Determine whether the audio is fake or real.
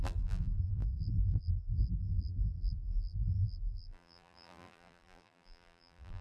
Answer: fake